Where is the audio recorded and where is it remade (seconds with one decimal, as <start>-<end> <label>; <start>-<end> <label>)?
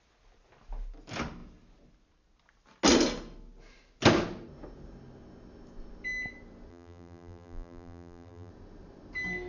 0.0-6.7 recorded; 6.7-8.5 remade; 8.5-9.5 recorded